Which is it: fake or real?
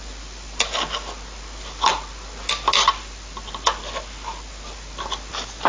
real